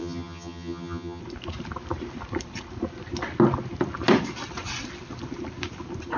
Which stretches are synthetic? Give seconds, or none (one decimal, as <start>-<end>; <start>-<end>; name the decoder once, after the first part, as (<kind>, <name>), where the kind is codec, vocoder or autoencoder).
0.0-1.2 (vocoder, HiFi-GAN)